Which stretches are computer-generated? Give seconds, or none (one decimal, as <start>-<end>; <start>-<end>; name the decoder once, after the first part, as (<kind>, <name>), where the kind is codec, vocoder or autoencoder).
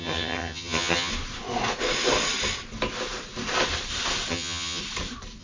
0.0-1.1 (vocoder, HiFi-GAN); 4.3-4.8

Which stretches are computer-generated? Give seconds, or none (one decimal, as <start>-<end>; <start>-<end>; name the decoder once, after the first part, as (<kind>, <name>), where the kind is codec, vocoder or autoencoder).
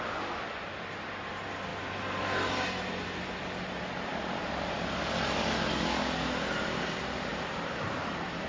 7.3-8.5 (vocoder, BigVGAN v2)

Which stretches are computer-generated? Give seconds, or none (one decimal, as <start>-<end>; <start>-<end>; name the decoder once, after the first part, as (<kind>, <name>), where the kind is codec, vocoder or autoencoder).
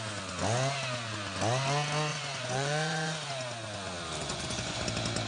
2.1-3.3 (vocoder, Vocos); 4.2-4.8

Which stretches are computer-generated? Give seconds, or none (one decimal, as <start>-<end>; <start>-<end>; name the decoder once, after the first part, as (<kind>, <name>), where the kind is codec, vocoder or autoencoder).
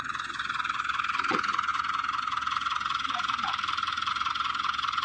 0.0-3.5 (vocoder, Vocos); 4.1-5.0